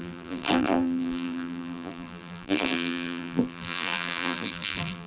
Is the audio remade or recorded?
remade